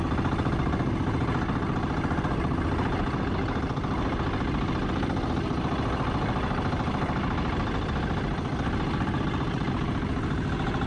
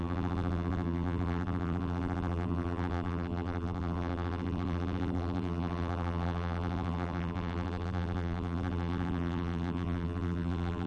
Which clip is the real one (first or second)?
first